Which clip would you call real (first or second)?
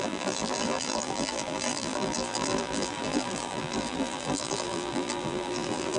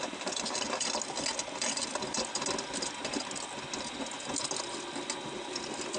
second